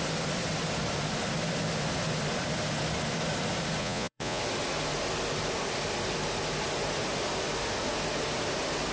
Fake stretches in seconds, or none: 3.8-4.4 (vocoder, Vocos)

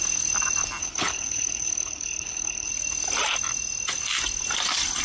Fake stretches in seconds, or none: 0.8-2.7 (codec, HILCodec)

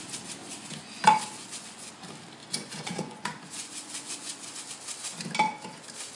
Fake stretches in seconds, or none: 0.4-1.9 (vocoder, Vocos); 2.4-4.6

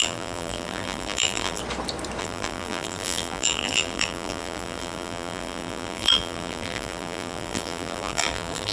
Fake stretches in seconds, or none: 0.0-1.6 (vocoder, BigVGAN v2); 2.2-8.7

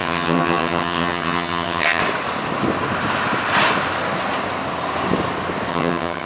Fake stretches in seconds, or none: 0.0-2.0 (vocoder, HiFi-GAN); 5.7-6.3

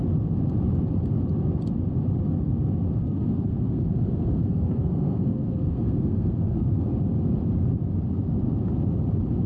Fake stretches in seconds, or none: 3.0-6.9 (codec, SNAC)

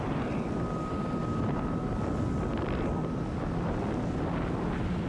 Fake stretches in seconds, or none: none

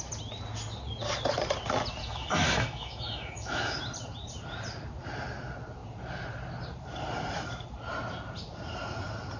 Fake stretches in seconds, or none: 2.0-3.8 (autoencoder, DAC-VAE)